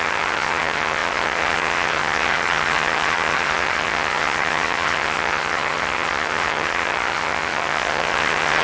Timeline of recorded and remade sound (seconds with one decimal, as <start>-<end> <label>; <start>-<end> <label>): 0.0-8.6 remade